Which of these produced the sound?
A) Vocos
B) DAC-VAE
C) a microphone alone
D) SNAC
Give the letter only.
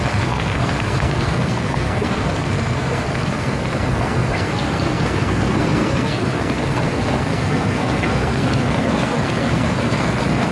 D